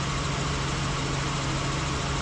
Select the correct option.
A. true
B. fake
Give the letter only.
A